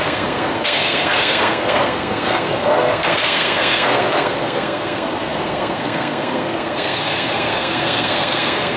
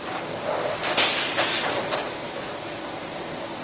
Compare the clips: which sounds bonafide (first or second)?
second